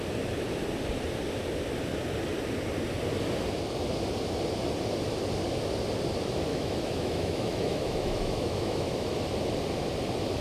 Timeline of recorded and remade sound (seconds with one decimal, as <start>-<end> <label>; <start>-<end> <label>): 0.0-6.5 recorded; 6.5-9.1 remade; 9.1-10.4 recorded